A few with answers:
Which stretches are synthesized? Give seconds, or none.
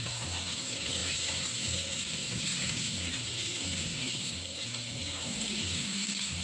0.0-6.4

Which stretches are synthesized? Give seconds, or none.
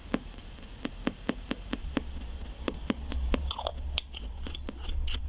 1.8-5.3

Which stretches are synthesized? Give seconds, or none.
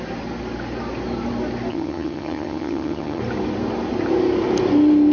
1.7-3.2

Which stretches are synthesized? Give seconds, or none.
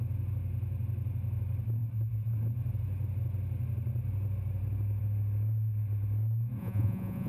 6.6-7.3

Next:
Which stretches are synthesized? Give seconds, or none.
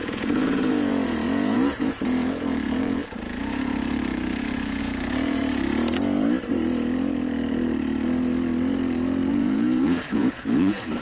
0.0-5.4; 9.3-11.0